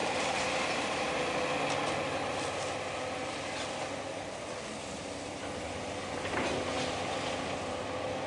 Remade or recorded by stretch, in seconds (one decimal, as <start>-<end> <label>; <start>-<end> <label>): 0.0-1.2 remade; 1.2-8.3 recorded